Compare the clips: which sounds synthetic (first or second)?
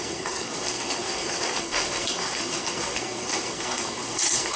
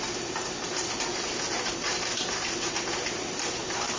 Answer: first